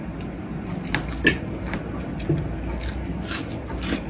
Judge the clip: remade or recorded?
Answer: recorded